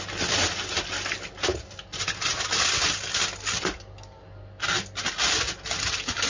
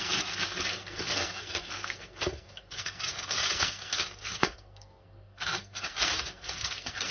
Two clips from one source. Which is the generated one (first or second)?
second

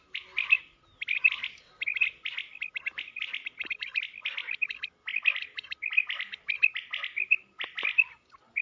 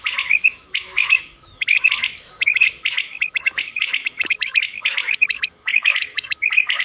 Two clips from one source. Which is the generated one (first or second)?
second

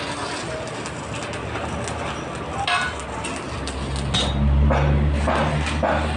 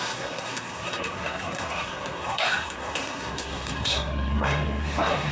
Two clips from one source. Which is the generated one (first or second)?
second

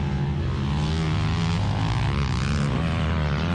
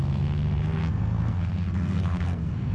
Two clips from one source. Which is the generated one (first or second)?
second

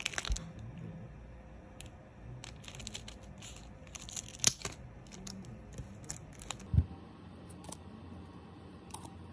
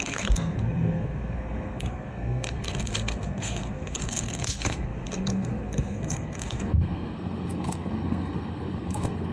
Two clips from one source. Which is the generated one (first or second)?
second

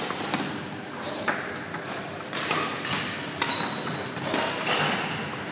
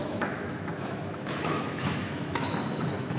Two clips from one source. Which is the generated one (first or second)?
second